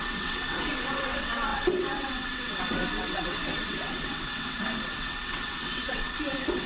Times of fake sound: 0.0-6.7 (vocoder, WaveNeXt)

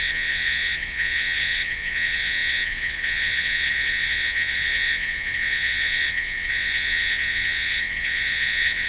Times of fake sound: 0.0-8.9 (vocoder, WaveNeXt)